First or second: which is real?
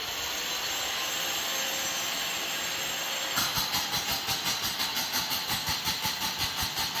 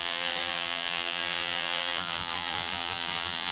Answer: first